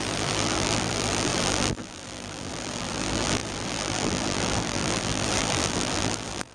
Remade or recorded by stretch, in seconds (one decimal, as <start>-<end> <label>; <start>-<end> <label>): 0.0-6.5 remade